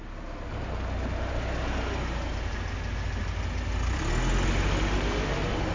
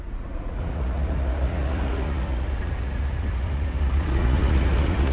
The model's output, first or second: second